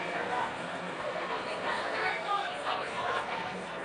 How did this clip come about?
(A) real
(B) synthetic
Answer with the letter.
B